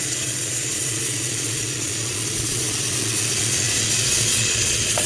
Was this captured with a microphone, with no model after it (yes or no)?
no